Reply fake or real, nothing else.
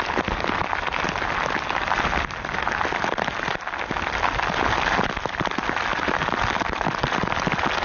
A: real